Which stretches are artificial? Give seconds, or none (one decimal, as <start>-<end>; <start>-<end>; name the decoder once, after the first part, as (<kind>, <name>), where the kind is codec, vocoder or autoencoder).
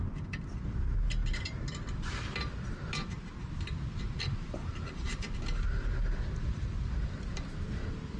none